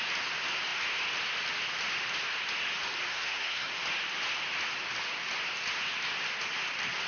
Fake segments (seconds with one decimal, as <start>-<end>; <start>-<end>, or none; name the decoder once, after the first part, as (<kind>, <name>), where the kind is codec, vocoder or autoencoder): 3.1-3.7 (codec, SNAC)